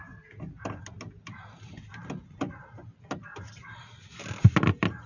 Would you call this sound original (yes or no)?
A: yes